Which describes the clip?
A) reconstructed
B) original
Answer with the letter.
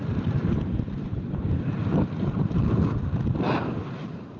A